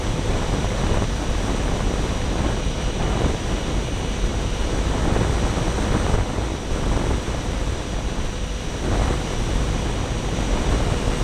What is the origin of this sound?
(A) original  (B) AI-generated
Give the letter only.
A